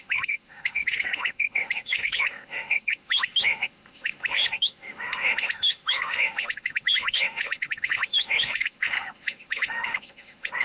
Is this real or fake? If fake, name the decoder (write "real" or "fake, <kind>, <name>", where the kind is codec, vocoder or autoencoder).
fake, autoencoder, DAC-VAE